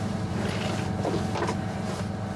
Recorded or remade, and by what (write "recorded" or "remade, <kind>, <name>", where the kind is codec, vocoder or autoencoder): recorded